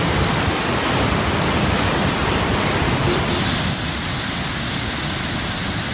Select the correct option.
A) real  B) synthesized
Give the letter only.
A